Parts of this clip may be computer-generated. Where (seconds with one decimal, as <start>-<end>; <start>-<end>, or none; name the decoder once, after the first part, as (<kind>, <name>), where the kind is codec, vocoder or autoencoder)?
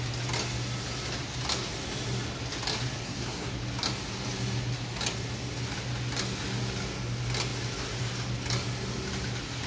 3.0-3.5 (codec, SNAC)